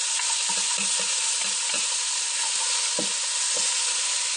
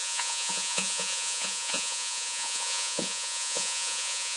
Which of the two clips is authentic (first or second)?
first